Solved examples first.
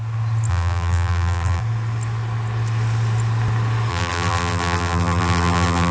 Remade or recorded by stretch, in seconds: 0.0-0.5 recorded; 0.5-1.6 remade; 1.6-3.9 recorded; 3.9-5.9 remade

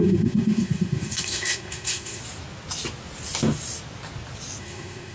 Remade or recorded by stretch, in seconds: 0.0-2.2 remade; 2.2-4.6 recorded; 4.6-5.1 remade

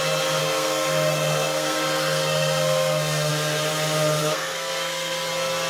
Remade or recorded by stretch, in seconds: 0.0-0.4 recorded; 0.4-3.3 remade; 3.3-4.2 recorded; 4.2-5.3 remade; 5.3-5.7 recorded

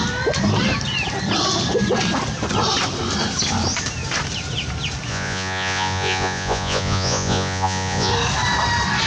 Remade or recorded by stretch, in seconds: 0.0-5.1 recorded; 5.1-8.1 remade; 8.1-9.1 recorded

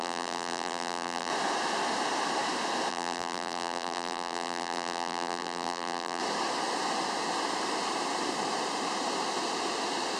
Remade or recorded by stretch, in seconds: 0.0-1.3 remade; 1.3-2.9 recorded; 2.9-6.2 remade; 6.2-10.2 recorded